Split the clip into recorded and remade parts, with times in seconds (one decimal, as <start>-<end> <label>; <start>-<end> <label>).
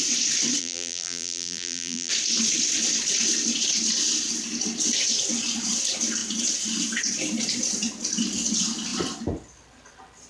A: 0.0-0.6 recorded; 0.6-2.1 remade; 2.1-10.3 recorded